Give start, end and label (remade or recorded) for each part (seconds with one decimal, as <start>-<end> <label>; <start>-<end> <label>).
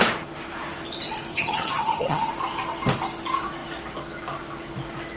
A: 0.0-1.3 recorded; 1.3-2.3 remade; 2.3-5.2 recorded